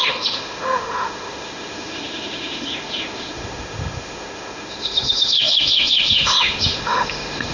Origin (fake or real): fake